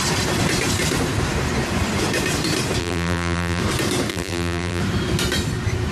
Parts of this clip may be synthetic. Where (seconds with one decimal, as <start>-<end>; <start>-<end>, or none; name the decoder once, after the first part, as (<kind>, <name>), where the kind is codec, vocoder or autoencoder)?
2.8-3.6 (vocoder, BigVGAN v2); 4.1-4.8